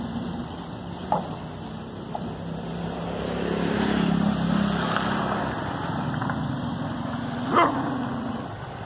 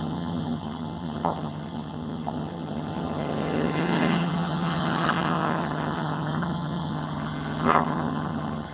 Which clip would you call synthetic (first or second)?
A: second